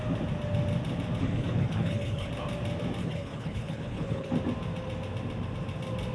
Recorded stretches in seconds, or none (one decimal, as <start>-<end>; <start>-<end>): 0.0-1.2; 2.3-3.0; 4.3-6.1